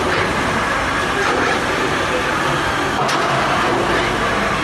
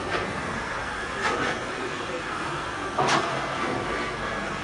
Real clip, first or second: first